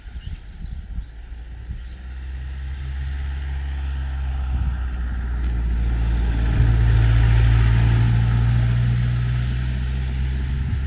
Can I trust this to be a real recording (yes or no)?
yes